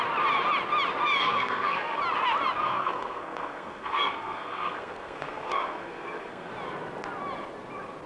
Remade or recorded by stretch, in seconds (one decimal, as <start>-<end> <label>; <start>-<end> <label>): 0.0-1.2 recorded; 1.2-2.0 remade; 2.0-2.6 recorded; 2.6-6.5 remade; 6.5-8.1 recorded